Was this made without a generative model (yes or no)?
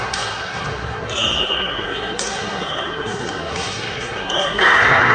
no